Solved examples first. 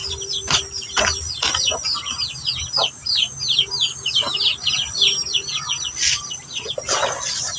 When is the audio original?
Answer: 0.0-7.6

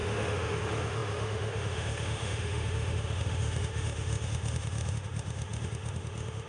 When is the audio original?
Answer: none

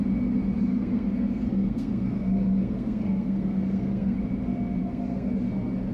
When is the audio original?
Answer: 0.0-0.7; 4.2-4.8; 5.3-5.9